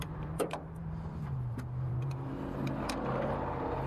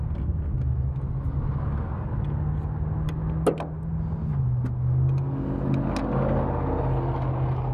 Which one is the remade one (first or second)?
first